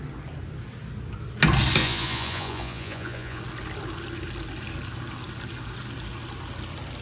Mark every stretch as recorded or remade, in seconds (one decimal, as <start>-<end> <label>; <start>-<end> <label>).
0.0-1.8 recorded; 1.8-3.4 remade; 3.4-7.0 recorded